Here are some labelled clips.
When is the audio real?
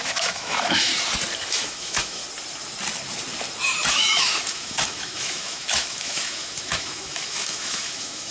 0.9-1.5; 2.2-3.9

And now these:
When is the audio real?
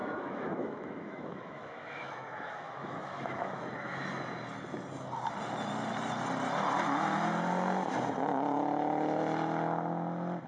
3.6-10.5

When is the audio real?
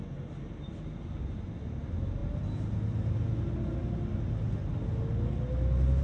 0.0-6.0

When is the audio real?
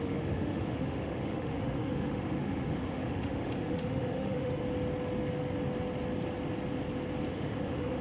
4.6-7.3